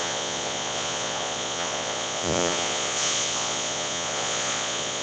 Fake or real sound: fake